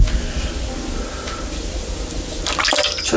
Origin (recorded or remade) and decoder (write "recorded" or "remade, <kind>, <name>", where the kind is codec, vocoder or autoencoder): recorded